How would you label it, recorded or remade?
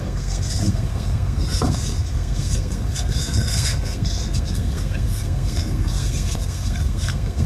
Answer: remade